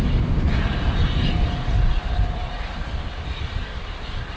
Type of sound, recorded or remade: recorded